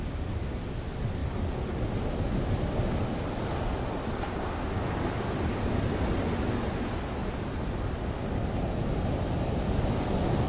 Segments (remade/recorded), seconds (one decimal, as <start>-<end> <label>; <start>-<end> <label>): 0.0-10.5 recorded